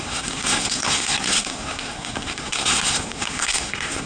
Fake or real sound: fake